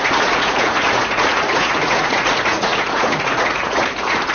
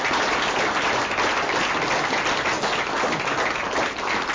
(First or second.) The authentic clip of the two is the second